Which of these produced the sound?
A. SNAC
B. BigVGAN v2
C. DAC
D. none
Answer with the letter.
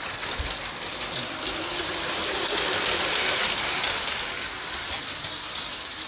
D